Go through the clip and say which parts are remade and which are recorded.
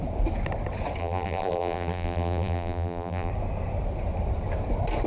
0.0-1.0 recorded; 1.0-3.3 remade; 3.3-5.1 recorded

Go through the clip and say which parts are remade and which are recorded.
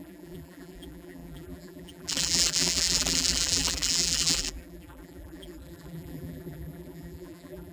0.0-7.7 remade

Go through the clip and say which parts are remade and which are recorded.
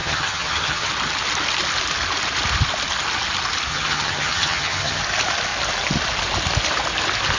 0.0-0.9 remade; 0.9-3.7 recorded; 3.7-5.0 remade; 5.0-7.4 recorded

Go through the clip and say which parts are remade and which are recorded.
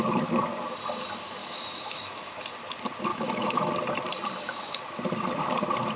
0.0-1.4 recorded; 1.4-2.4 remade; 2.4-3.1 recorded; 3.1-3.7 remade; 3.7-6.0 recorded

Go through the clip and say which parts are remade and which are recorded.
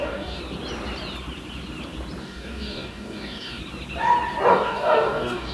0.0-0.4 remade; 0.4-2.2 recorded; 2.2-3.6 remade; 3.6-4.5 recorded; 4.5-5.5 remade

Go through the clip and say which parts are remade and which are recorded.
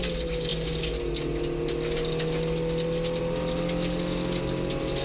0.0-5.0 recorded